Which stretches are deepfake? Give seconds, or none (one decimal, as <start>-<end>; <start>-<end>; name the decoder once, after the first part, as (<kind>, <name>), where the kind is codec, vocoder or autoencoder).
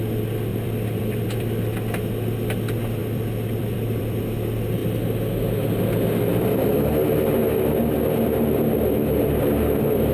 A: 0.5-1.6 (vocoder, BigVGAN v2); 3.0-4.2